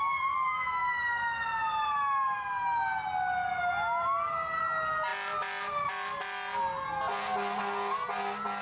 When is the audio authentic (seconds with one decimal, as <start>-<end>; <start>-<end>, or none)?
0.0-8.6